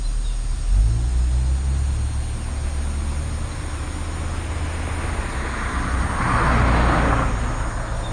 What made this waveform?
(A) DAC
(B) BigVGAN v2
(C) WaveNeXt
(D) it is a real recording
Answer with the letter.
D